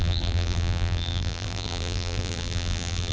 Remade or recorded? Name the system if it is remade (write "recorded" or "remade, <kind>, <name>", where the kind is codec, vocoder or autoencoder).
remade, vocoder, BigVGAN v2